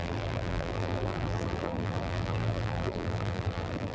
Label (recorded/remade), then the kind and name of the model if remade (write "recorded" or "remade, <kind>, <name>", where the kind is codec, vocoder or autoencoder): remade, vocoder, BigVGAN v2